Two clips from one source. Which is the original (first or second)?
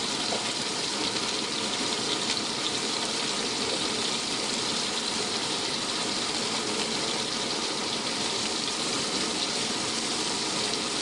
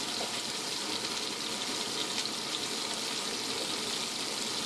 second